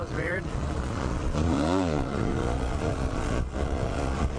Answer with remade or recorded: remade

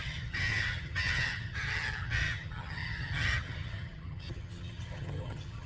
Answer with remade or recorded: remade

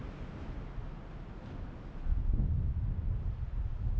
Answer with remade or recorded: recorded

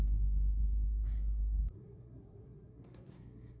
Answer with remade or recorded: remade